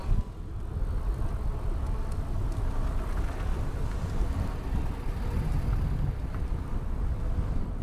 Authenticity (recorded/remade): recorded